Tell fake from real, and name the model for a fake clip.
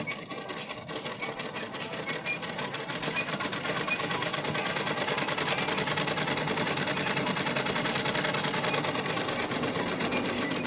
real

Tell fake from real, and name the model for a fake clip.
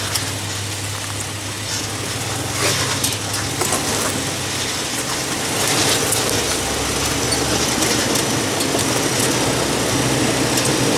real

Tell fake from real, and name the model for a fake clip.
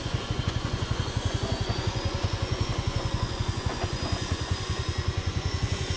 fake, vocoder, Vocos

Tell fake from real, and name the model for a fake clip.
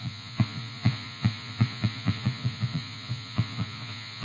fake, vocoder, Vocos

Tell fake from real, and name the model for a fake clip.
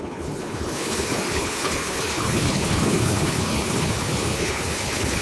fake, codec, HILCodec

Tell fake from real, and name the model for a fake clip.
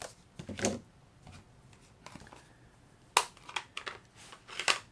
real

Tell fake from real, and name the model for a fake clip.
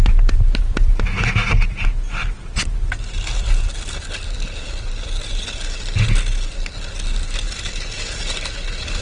real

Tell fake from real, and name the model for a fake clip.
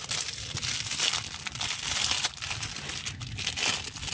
real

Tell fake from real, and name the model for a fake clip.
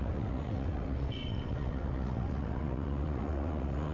fake, vocoder, WaveNeXt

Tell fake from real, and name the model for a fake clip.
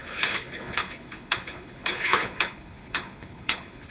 fake, codec, HILCodec